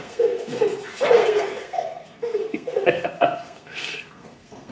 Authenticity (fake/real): fake